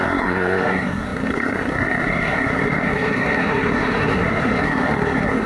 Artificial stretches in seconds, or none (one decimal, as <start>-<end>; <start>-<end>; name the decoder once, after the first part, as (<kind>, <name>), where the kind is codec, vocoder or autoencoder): 0.0-5.5 (codec, SNAC)